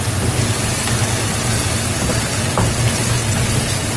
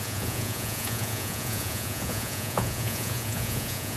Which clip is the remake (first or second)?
second